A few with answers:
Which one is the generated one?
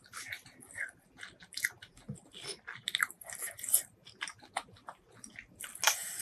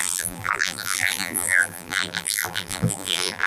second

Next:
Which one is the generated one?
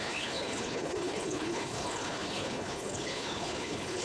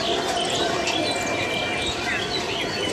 first